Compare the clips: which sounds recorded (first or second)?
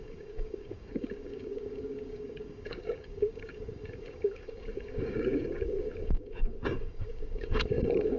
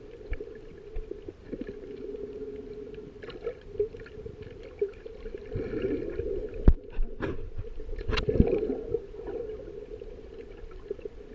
second